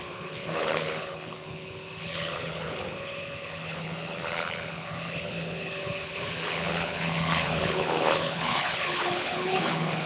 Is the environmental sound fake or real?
fake